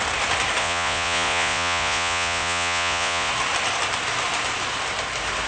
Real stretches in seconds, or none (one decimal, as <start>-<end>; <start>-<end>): 0.0-0.6; 3.3-5.5